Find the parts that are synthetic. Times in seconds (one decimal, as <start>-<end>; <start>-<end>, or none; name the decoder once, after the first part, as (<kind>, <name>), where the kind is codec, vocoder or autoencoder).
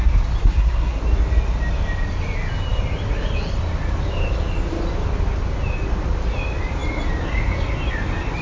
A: 0.4-1.0 (codec, SNAC)